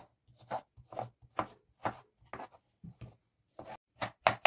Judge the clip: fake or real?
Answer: real